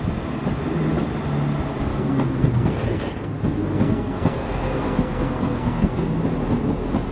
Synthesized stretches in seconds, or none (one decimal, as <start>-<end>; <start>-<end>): 1.9-6.2